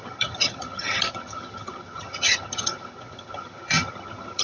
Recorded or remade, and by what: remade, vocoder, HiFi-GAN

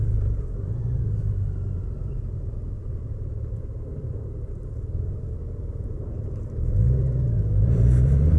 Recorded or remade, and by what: remade, vocoder, BigVGAN v2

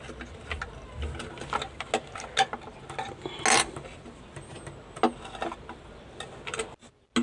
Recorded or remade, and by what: recorded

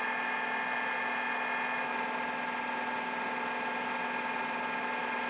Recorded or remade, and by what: recorded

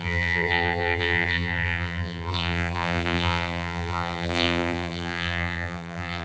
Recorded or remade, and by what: remade, vocoder, BigVGAN v2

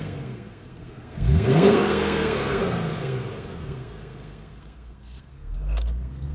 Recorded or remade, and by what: remade, codec, SNAC